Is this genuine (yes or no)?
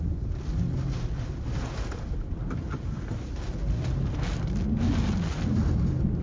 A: yes